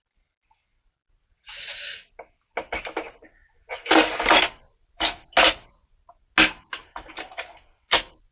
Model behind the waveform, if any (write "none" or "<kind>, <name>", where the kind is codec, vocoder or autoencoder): none